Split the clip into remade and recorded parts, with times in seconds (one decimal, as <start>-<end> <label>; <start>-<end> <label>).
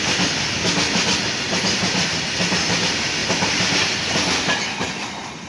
0.0-5.5 recorded